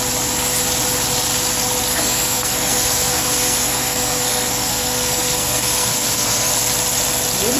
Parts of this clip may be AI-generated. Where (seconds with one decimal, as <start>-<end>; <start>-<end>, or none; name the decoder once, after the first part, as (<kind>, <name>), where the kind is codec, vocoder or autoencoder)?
1.9-6.5 (codec, SNAC)

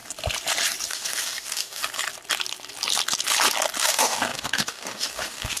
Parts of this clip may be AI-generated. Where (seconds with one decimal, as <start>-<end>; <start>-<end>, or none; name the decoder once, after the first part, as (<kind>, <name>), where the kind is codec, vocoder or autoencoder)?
0.9-1.8 (codec, DAC); 3.8-5.6

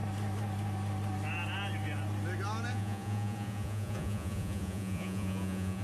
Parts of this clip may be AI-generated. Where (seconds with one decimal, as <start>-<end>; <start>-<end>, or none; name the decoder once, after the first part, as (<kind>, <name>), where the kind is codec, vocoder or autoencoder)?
2.7-5.8 (vocoder, Vocos)